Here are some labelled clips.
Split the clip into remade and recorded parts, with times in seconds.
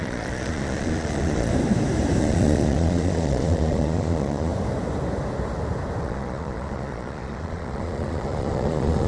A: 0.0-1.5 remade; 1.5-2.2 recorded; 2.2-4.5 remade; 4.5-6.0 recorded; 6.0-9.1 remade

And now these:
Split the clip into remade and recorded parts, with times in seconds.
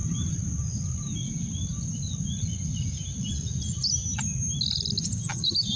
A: 0.0-4.0 remade; 4.0-5.0 recorded; 5.0-5.8 remade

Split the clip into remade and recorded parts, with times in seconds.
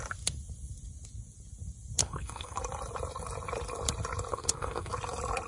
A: 0.0-2.0 recorded; 2.0-2.6 remade; 2.6-4.3 recorded; 4.3-4.9 remade; 4.9-5.5 recorded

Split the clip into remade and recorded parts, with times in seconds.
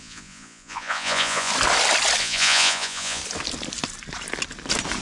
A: 0.0-1.5 remade; 1.5-2.2 recorded; 2.2-3.2 remade; 3.2-5.0 recorded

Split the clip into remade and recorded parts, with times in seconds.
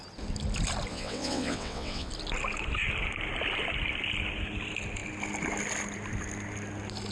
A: 0.0-0.9 recorded; 0.9-2.1 remade; 2.1-7.1 recorded